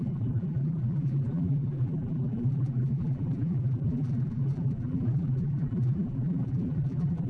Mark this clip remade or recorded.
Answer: remade